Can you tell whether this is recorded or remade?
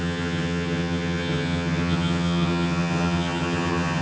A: remade